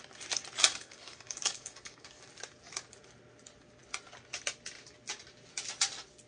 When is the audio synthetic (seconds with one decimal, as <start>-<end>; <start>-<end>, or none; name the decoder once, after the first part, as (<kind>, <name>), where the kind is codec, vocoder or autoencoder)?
0.7-2.3 (codec, DAC)